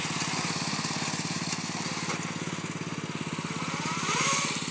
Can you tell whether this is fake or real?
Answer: real